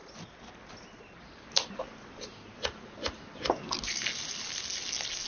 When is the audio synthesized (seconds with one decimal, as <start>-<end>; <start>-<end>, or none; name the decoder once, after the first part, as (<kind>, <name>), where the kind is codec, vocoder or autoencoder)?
none

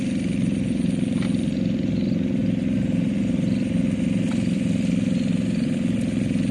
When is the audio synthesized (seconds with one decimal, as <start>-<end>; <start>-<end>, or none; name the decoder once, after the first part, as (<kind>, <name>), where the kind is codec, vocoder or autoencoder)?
none

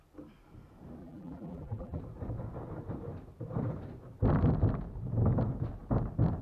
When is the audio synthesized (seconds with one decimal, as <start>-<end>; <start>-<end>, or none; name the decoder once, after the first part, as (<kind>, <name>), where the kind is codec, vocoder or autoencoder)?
1.0-2.0 (vocoder, BigVGAN v2)

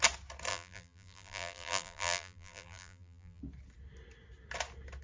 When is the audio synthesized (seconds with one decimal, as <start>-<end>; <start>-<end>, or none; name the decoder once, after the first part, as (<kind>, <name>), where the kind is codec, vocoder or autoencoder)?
0.5-3.4 (vocoder, BigVGAN v2)

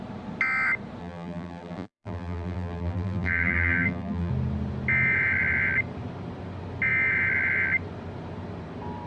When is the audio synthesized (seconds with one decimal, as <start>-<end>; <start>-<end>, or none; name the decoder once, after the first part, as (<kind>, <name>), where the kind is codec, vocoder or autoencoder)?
1.0-4.3 (vocoder, BigVGAN v2)

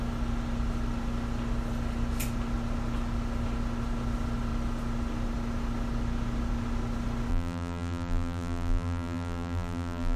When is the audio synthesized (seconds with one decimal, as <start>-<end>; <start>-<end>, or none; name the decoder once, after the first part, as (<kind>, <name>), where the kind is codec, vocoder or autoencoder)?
7.3-10.2 (vocoder, BigVGAN v2)